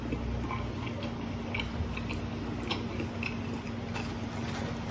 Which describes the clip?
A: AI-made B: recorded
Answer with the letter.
B